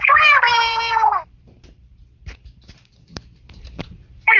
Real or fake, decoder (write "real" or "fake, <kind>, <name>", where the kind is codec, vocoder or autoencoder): fake, vocoder, BigVGAN v2